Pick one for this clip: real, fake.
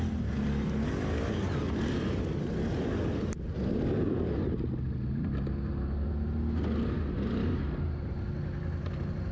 real